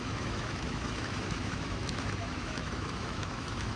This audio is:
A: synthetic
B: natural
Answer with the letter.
A